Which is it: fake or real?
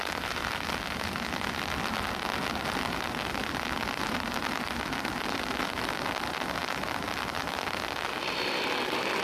real